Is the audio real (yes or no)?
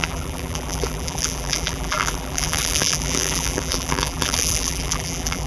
no